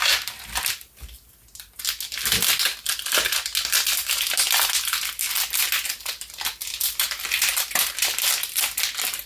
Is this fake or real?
real